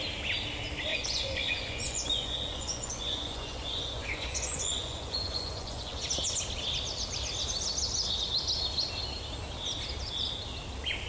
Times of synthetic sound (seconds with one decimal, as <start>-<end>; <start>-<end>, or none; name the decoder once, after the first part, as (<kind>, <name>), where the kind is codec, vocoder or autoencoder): 0.9-6.0 (vocoder, Vocos)